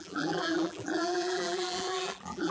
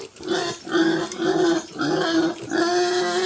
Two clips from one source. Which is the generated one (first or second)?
first